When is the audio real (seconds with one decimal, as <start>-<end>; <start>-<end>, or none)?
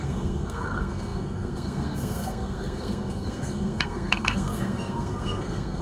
none